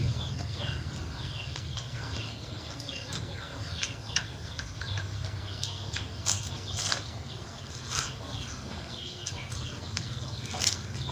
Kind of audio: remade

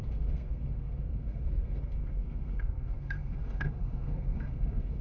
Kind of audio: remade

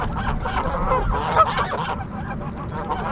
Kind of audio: recorded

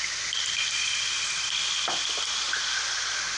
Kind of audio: recorded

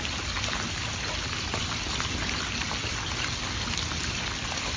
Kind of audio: recorded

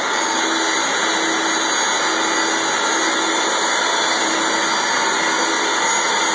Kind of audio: recorded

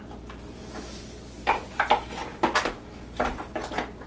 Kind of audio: recorded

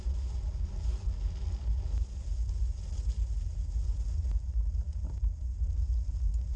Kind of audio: recorded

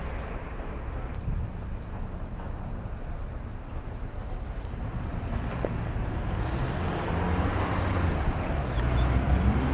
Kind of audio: recorded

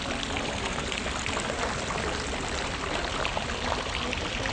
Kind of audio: recorded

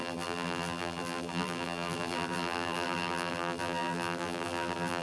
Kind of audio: remade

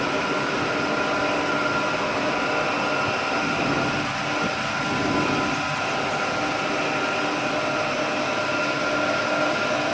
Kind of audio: recorded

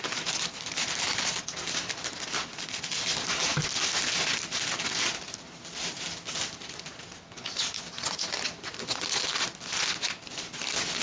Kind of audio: recorded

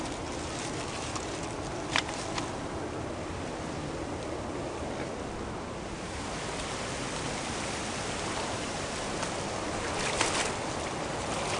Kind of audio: recorded